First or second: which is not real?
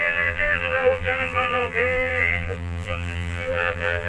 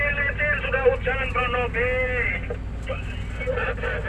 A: first